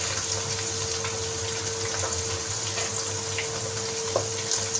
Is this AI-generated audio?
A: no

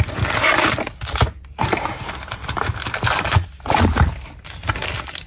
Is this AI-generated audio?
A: no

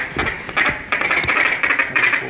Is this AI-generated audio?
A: no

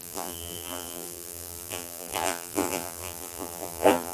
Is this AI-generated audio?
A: yes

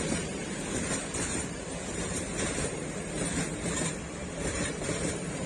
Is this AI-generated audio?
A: yes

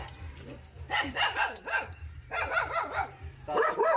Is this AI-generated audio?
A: yes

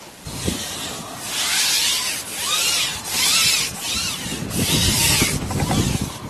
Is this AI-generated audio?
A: no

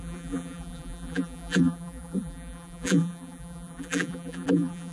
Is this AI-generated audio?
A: yes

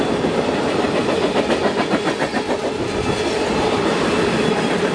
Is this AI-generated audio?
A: no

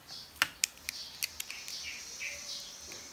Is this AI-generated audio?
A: no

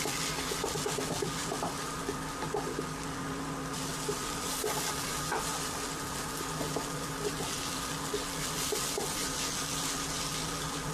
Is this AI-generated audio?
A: no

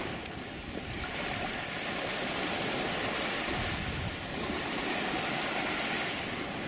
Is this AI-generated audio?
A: yes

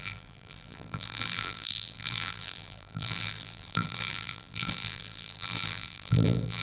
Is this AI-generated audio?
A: yes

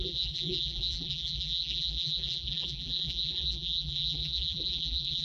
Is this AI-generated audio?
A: yes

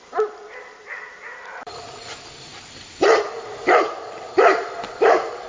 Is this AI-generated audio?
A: yes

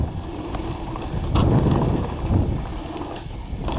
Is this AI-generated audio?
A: no